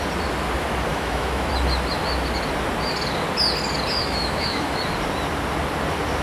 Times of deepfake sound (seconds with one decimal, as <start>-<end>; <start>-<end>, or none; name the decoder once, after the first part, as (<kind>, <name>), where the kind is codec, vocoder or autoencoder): 0.9-1.5 (autoencoder, DAC-VAE); 4.0-4.8

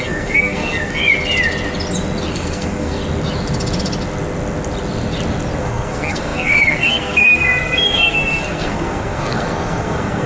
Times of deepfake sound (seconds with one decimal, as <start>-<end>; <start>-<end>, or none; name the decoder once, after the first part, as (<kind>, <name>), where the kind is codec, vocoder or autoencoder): 0.0-1.0 (codec, SNAC); 2.3-3.0; 5.6-10.3

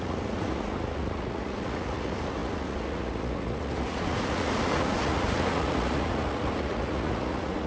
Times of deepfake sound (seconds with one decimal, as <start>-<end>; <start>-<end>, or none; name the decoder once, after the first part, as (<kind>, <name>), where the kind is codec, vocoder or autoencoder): 0.0-7.7 (vocoder, Vocos)